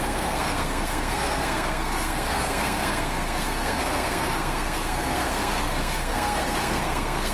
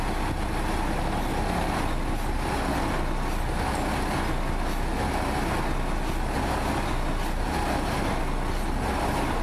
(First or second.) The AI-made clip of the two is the first